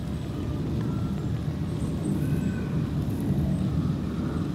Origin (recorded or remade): recorded